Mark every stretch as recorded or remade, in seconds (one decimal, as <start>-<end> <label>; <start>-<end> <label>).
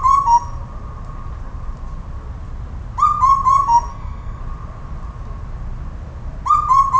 0.0-3.9 recorded; 3.9-4.4 remade; 4.4-7.0 recorded